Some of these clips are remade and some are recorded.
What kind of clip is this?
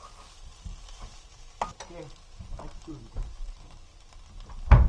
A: recorded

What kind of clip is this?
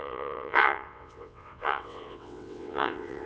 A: remade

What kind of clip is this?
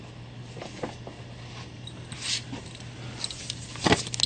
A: recorded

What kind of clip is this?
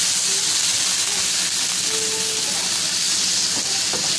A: recorded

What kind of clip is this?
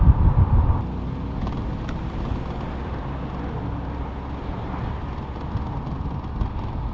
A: recorded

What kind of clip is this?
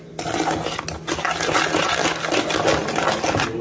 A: recorded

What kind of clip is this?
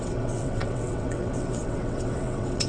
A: remade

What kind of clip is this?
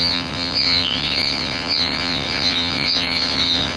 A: remade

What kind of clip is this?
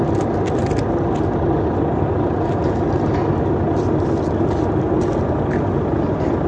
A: recorded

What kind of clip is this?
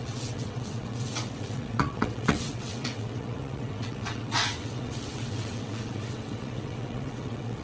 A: remade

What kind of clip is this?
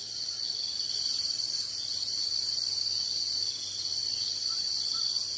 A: recorded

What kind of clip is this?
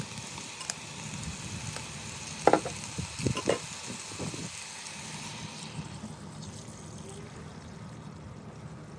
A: recorded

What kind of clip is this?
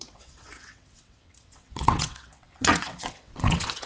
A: remade